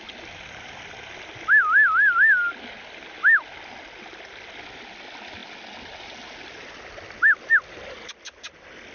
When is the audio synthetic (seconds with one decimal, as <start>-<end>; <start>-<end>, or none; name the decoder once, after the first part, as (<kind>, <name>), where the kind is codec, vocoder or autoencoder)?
none